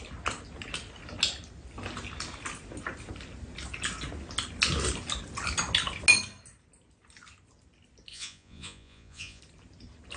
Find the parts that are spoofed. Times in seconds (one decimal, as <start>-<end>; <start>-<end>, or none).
8.1-9.4